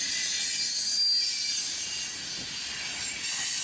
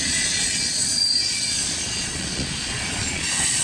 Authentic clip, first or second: first